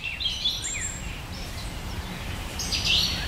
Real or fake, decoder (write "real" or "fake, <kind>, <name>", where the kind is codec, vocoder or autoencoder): fake, vocoder, BigVGAN v2